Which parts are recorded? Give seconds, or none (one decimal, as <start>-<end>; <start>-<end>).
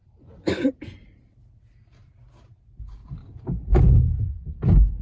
0.8-3.0; 4.3-5.0